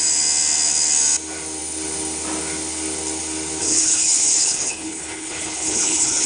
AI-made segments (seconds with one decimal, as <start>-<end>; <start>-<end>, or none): 3.6-6.3